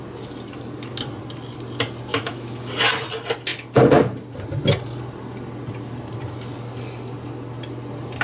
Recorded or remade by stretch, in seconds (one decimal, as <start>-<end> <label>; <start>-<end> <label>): 0.0-2.1 recorded; 2.1-2.7 remade; 2.7-8.2 recorded